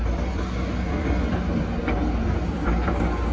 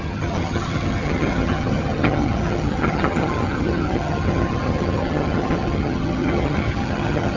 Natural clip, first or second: first